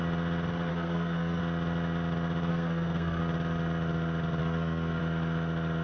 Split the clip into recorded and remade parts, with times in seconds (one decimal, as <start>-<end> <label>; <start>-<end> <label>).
0.0-0.7 recorded; 0.7-1.4 remade; 1.4-2.5 recorded; 2.5-3.2 remade; 3.2-4.4 recorded; 4.4-5.0 remade; 5.0-5.8 recorded